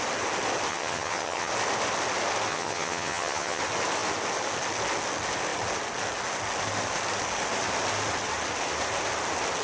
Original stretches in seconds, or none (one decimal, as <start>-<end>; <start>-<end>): 0.0-0.7; 1.5-2.5; 3.6-9.6